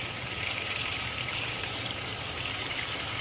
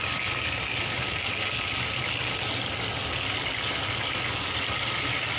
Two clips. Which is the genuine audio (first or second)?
second